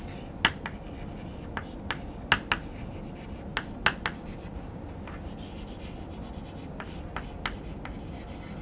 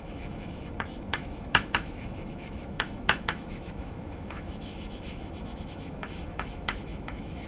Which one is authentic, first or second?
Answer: first